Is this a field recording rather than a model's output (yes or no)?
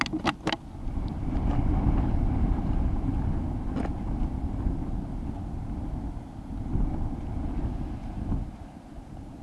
yes